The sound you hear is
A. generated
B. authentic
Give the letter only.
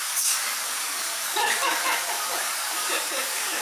A